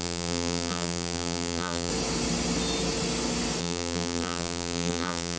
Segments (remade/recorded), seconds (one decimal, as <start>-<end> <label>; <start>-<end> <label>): 0.0-1.9 remade; 1.9-3.6 recorded; 3.6-5.4 remade